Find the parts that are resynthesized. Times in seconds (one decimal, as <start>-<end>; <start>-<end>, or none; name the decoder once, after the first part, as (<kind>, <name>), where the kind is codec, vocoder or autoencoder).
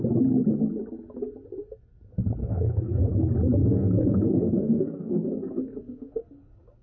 2.4-3.0 (codec, SNAC); 3.6-6.2